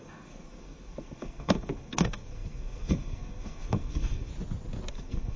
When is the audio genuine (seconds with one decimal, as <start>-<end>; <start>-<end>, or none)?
4.3-4.9